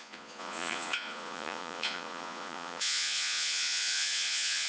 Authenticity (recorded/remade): remade